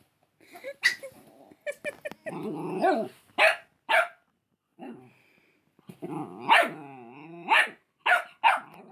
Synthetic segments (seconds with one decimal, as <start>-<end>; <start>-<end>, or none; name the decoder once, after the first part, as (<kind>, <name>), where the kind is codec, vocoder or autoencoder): none